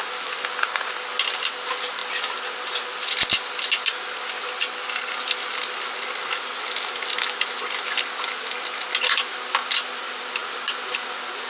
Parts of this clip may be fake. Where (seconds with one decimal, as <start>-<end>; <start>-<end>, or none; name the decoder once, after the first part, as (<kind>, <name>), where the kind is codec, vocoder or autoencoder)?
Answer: none